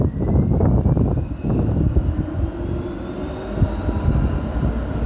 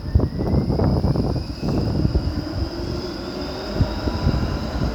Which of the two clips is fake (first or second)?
second